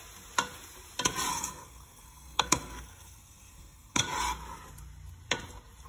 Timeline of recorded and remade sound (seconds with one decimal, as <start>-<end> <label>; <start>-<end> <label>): 0.0-1.3 recorded; 1.3-4.0 remade; 4.0-5.9 recorded